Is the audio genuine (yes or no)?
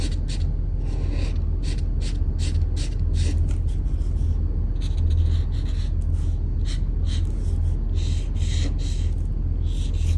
yes